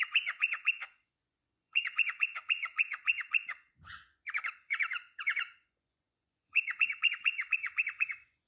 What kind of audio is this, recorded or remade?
remade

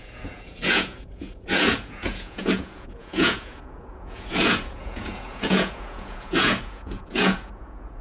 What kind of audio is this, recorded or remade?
remade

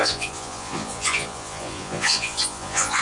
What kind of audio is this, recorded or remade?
remade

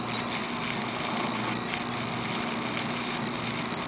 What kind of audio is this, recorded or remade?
recorded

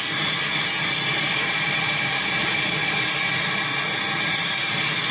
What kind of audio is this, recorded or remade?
recorded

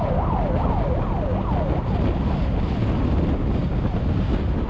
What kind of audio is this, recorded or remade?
recorded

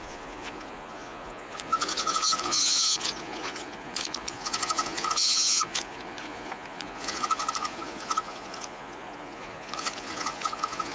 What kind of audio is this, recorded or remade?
remade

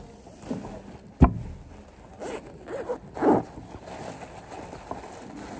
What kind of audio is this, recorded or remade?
recorded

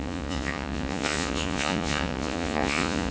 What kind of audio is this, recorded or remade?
remade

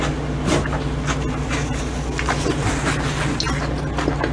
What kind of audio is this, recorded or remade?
recorded